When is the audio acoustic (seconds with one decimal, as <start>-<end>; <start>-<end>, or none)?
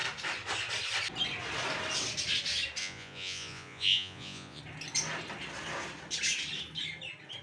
0.0-2.8; 4.6-7.4